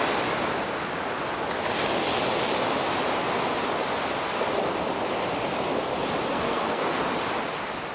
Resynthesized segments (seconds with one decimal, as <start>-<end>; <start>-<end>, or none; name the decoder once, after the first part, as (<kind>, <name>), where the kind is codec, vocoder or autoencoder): 6.3-7.0 (codec, SNAC)